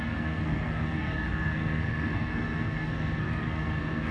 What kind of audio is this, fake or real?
fake